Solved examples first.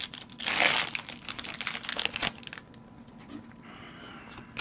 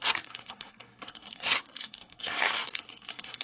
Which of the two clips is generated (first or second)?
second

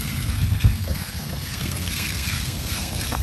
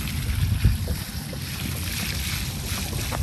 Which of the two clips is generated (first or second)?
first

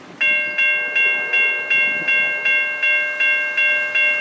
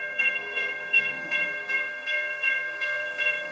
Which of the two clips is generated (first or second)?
second